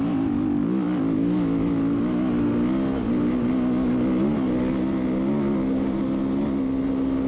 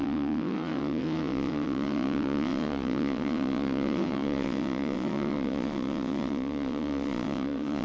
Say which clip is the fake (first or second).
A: second